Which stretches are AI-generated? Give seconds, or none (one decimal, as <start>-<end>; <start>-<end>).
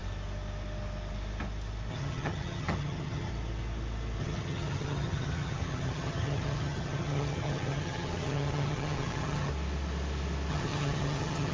1.9-3.3; 4.2-9.5; 10.5-11.5